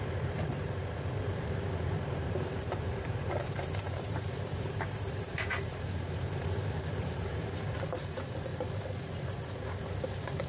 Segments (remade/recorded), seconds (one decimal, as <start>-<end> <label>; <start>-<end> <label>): 0.0-8.5 remade; 8.5-10.5 recorded